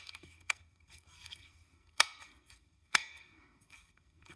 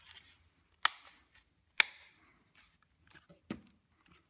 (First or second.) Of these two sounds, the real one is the second